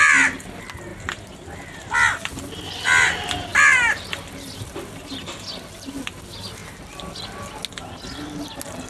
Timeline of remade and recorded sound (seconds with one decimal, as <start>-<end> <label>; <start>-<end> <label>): 0.0-8.9 recorded